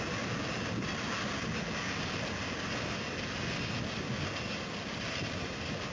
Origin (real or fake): real